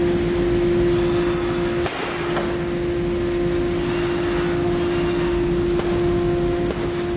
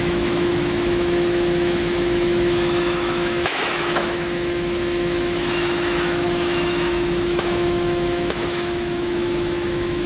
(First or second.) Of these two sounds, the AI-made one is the second